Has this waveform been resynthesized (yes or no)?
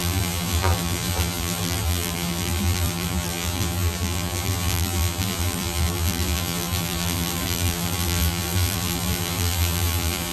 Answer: yes